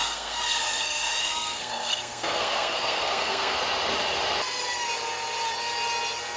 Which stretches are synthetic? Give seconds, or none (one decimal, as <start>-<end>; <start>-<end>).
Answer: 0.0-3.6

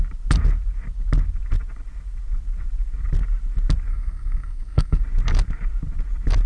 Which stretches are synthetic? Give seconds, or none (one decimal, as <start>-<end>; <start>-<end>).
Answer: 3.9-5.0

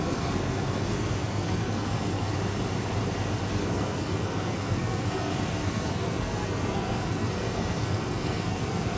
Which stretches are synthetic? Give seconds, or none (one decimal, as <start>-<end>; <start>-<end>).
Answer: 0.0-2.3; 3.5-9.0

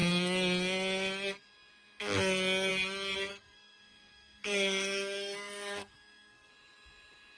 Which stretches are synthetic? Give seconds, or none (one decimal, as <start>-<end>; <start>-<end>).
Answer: 3.3-6.5